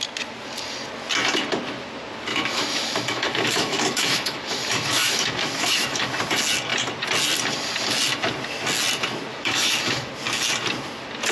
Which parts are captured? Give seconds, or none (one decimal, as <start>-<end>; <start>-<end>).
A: 0.0-2.3; 6.2-9.3; 10.1-11.3